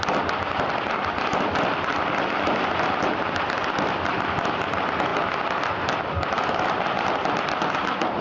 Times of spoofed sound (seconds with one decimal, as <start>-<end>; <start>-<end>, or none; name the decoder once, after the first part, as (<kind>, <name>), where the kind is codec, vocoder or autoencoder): none